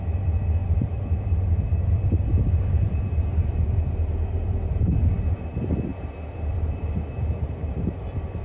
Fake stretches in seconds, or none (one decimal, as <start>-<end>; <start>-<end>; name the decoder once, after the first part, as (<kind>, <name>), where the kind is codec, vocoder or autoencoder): 0.6-3.0 (vocoder, BigVGAN v2)